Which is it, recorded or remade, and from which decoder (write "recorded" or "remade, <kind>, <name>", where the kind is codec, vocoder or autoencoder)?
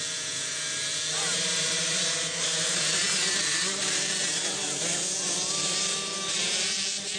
remade, vocoder, BigVGAN v2